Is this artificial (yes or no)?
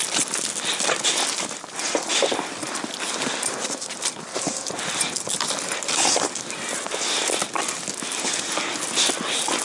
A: no